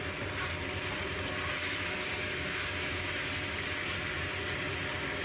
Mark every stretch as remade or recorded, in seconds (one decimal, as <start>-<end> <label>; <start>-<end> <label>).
0.0-1.6 recorded; 1.6-3.9 remade; 3.9-5.2 recorded